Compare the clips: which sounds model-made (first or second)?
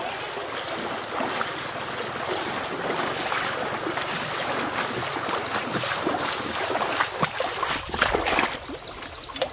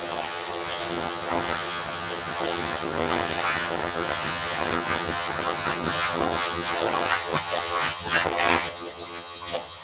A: second